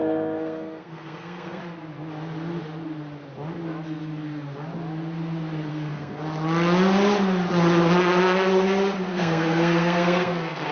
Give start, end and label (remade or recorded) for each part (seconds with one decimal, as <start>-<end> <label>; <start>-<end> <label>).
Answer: 0.0-1.6 remade; 1.6-5.7 recorded; 5.7-6.2 remade; 6.2-9.1 recorded; 9.1-10.7 remade